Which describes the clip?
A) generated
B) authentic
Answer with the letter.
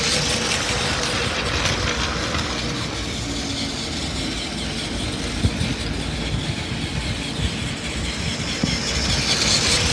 B